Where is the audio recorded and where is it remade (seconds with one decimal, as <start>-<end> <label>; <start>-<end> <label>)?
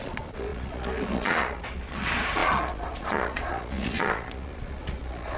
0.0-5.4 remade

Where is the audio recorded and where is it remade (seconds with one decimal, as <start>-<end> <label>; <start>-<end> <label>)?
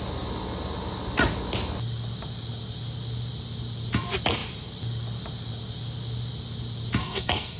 0.0-7.0 recorded; 7.0-7.6 remade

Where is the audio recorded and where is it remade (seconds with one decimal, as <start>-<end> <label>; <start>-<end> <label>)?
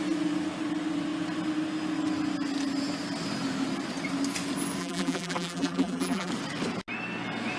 0.0-4.8 recorded; 4.8-6.3 remade; 6.3-7.6 recorded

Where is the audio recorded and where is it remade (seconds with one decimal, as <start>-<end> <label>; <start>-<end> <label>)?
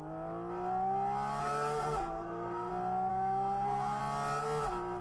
0.0-1.4 recorded; 1.4-2.7 remade; 2.7-3.1 recorded; 3.1-4.0 remade; 4.0-5.0 recorded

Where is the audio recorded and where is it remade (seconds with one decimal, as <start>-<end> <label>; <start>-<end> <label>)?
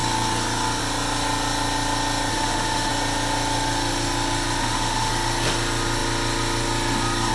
0.0-2.3 recorded; 2.3-2.9 remade; 2.9-4.6 recorded; 4.6-5.1 remade; 5.1-7.3 recorded